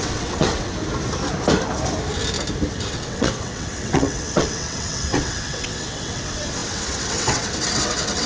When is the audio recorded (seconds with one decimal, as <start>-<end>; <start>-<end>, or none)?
0.7-2.7